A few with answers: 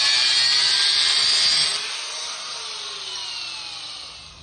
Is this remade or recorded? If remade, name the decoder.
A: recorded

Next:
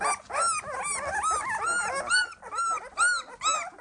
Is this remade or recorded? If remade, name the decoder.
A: recorded